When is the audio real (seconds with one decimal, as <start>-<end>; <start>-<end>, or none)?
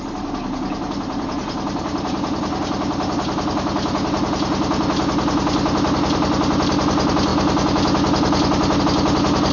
0.0-9.5